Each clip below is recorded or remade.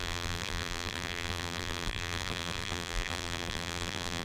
remade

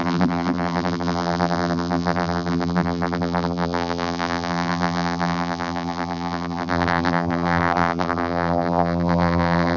remade